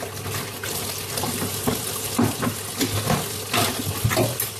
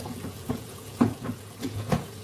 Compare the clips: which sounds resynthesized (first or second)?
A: second